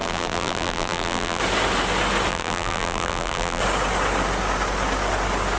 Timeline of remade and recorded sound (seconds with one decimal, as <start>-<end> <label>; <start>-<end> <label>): 0.0-1.4 remade; 1.4-2.3 recorded; 2.3-3.6 remade; 3.6-5.6 recorded